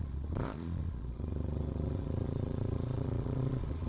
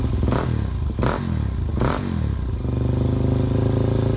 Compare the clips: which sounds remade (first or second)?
first